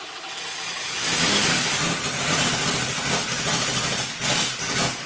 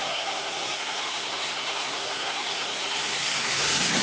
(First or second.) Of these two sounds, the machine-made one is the second